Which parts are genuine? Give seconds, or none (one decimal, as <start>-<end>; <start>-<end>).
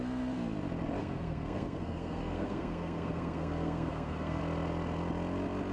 0.0-1.0; 4.4-5.7